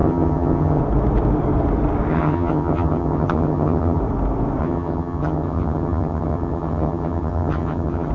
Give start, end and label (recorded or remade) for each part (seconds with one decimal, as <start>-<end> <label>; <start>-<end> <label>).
0.0-0.8 remade; 0.8-2.1 recorded; 2.1-4.0 remade; 4.0-4.6 recorded; 4.6-8.1 remade